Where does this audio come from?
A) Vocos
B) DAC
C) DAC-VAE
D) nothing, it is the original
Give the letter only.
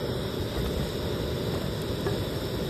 D